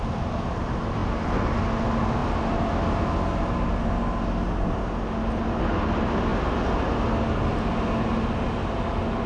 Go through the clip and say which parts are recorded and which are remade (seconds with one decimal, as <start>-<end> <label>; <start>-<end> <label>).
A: 0.0-1.0 recorded; 1.0-1.6 remade; 1.6-6.3 recorded; 6.3-6.9 remade; 6.9-9.3 recorded